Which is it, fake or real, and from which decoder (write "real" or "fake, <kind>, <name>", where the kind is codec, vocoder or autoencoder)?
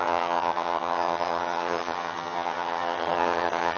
fake, vocoder, HiFi-GAN